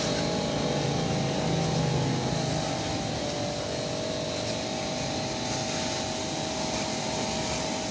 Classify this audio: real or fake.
real